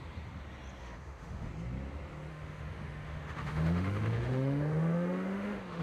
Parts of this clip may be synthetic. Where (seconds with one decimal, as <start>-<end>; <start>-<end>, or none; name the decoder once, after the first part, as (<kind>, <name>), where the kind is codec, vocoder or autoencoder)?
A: 0.8-1.5 (autoencoder, DAC-VAE); 2.3-5.8